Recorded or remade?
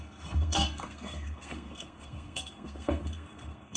remade